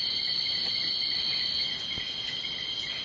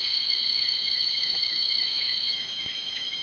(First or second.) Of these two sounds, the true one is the first